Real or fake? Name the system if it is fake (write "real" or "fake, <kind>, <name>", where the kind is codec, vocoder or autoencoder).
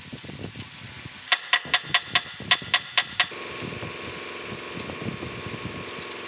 real